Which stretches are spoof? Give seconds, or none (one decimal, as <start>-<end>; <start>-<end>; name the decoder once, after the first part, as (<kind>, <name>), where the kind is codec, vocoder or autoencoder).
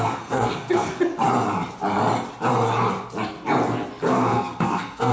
0.0-1.0 (codec, SNAC); 4.1-5.1